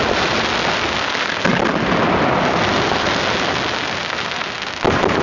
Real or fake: real